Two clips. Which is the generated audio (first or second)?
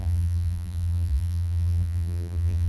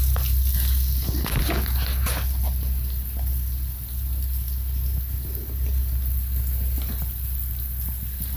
first